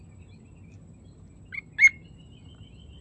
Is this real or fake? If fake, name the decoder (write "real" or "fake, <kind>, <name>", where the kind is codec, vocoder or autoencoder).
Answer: real